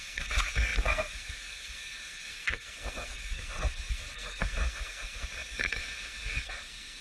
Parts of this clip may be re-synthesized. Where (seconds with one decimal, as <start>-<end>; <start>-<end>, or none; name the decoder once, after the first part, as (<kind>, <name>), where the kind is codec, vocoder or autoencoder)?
0.0-7.0 (codec, SNAC)